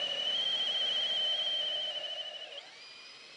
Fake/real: real